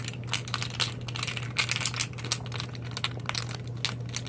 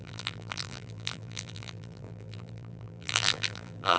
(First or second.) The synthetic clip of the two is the second